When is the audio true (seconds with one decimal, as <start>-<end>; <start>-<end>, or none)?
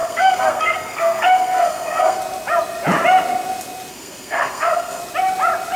2.2-3.9; 5.0-5.8